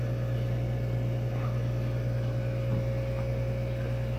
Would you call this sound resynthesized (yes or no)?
no